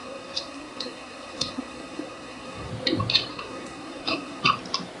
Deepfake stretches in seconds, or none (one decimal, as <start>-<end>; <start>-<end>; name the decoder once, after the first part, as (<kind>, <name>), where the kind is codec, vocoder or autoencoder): 0.0-2.7 (codec, SNAC); 3.3-4.4